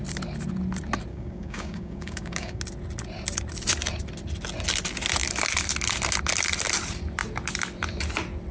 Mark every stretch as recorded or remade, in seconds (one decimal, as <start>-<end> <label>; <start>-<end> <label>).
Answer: 0.0-1.1 recorded; 1.1-2.6 remade; 2.6-8.5 recorded